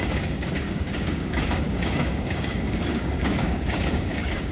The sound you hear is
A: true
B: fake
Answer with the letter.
B